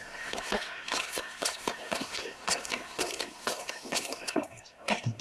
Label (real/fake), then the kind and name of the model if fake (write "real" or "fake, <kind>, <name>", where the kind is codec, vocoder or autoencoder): fake, codec, SNAC